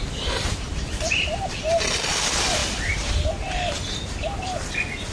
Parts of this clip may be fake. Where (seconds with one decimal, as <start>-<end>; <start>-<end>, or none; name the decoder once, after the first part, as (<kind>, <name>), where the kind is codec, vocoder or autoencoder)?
0.7-1.9 (vocoder, BigVGAN v2); 2.6-3.6